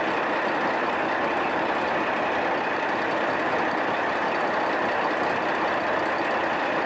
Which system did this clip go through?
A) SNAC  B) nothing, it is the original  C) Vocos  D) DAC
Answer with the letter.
B